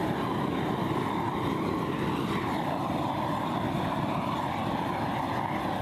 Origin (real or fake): fake